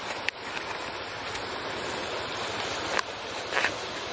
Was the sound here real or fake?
real